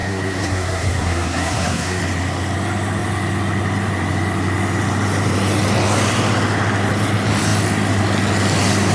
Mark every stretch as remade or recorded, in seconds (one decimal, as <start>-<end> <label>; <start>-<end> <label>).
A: 0.0-2.0 remade; 2.0-8.9 recorded